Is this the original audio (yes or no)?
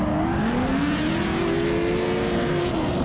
yes